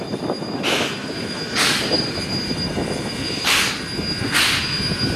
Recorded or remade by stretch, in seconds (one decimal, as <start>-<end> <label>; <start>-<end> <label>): 0.0-1.0 recorded; 1.0-3.6 remade; 3.6-5.2 recorded